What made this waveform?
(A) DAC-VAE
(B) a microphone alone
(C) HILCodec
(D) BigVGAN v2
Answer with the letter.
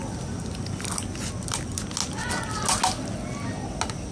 B